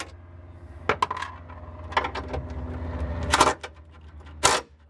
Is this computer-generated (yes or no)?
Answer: no